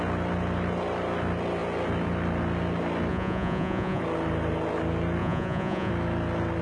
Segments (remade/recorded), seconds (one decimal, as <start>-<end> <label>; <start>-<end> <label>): 0.0-3.1 recorded; 3.1-4.0 remade; 4.0-5.2 recorded; 5.2-5.9 remade; 5.9-6.6 recorded